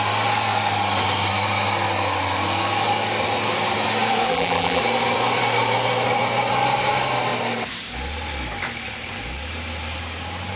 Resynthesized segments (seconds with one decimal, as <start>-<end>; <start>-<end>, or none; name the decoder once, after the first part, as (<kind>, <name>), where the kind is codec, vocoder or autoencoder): 4.3-4.8 (vocoder, BigVGAN v2)